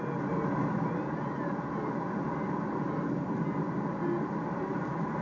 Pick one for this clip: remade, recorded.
recorded